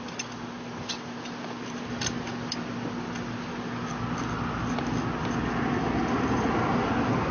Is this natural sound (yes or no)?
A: yes